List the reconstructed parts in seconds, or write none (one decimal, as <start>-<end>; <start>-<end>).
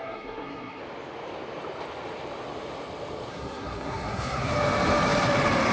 0.0-0.8; 3.3-4.5